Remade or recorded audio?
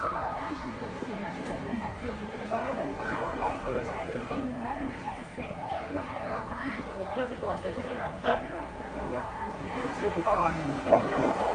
remade